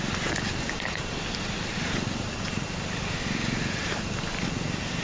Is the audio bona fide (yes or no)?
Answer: yes